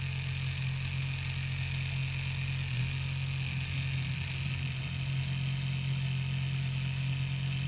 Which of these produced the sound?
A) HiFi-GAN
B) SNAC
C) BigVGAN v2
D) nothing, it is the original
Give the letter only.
D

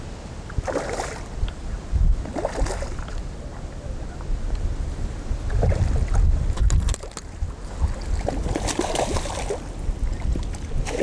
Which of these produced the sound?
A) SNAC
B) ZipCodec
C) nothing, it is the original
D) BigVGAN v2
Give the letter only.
C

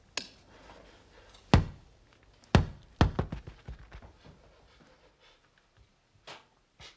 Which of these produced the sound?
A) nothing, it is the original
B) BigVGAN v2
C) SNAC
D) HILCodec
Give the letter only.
A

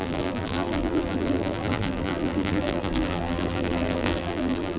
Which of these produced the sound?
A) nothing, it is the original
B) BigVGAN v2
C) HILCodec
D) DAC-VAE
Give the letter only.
B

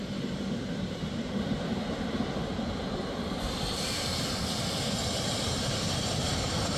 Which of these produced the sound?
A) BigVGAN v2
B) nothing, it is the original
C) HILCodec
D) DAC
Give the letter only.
A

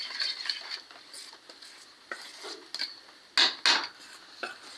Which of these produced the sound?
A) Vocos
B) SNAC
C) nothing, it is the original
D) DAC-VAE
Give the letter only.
C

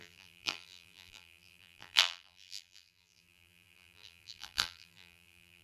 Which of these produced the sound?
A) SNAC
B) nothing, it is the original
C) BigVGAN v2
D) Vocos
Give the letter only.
C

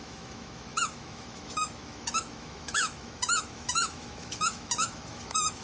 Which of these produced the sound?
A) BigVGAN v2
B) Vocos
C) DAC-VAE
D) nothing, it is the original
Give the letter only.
C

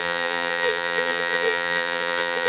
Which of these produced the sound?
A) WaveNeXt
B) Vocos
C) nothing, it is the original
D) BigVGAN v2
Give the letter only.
D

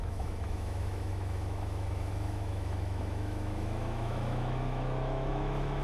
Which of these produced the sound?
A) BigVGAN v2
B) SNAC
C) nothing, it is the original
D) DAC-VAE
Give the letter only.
D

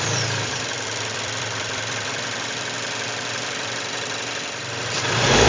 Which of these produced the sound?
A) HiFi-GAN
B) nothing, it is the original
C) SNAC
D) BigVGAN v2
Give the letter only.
D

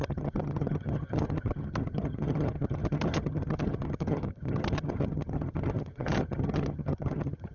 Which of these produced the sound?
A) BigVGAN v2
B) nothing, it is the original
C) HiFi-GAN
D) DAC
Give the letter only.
C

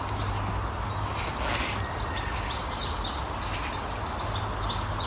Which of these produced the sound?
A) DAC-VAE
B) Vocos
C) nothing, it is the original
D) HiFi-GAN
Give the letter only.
C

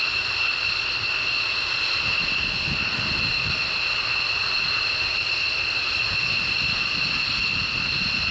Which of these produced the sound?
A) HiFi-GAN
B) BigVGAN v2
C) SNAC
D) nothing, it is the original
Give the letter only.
D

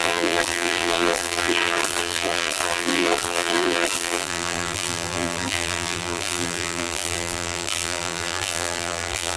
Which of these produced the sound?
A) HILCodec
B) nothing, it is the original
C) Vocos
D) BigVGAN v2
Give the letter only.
D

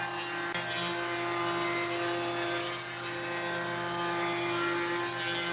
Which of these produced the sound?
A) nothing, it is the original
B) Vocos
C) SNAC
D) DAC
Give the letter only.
A